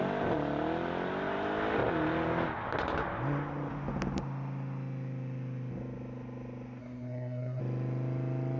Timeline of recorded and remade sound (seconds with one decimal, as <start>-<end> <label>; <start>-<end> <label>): 0.0-6.8 recorded; 6.8-7.6 remade; 7.6-8.6 recorded